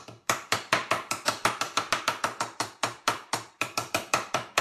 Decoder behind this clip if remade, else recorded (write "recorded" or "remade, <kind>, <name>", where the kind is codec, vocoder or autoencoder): remade, vocoder, BigVGAN v2